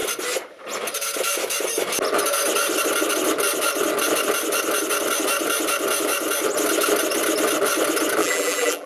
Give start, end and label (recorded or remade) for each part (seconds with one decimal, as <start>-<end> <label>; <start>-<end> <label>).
0.0-8.2 recorded; 8.2-8.9 remade